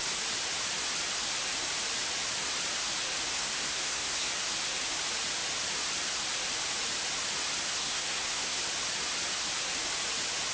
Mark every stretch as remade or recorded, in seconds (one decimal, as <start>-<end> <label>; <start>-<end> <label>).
0.0-3.3 recorded; 3.3-4.3 remade; 4.3-7.8 recorded; 7.8-8.6 remade; 8.6-10.5 recorded